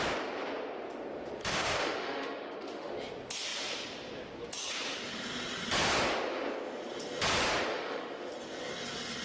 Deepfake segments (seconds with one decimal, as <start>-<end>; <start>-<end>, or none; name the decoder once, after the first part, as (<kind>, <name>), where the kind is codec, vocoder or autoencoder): 1.4-2.9 (autoencoder, DAC-VAE); 7.7-8.3